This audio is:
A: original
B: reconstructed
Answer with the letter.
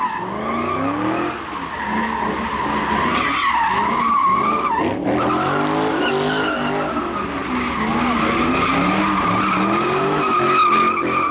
A